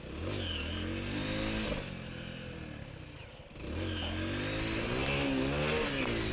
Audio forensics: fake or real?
real